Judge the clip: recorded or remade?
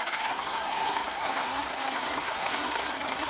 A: remade